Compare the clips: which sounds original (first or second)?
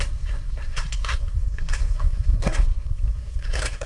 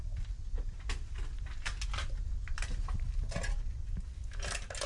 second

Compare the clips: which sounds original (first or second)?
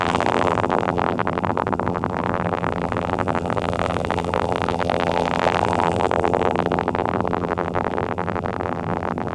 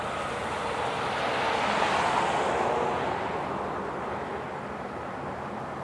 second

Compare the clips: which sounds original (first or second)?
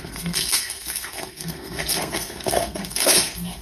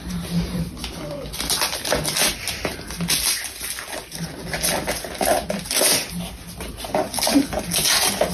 second